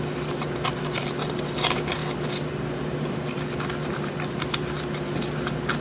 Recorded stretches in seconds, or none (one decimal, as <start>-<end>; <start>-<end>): 0.0-5.8